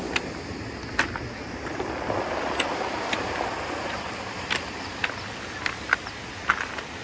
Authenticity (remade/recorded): recorded